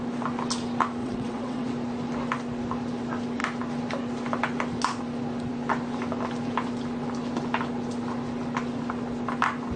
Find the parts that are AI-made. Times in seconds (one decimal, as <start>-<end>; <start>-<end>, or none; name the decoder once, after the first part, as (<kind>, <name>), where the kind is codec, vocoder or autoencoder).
1.0-1.7 (vocoder, WaveNeXt)